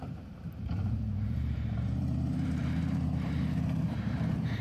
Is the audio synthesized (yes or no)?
yes